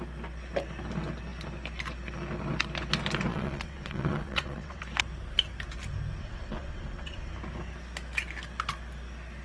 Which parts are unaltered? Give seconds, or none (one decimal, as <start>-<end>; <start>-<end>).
0.0-3.3; 4.8-6.2; 7.3-9.4